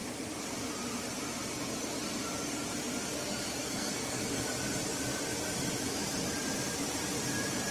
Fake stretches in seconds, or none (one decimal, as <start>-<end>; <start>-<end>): 3.6-4.2